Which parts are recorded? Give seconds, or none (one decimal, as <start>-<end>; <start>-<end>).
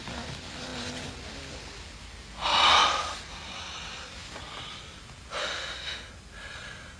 0.0-5.4; 6.1-7.0